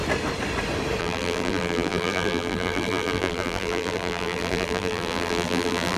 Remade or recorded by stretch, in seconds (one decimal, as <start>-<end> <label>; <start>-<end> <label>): 0.0-1.0 recorded; 1.0-6.0 remade